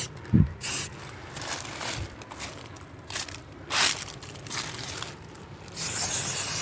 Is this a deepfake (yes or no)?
no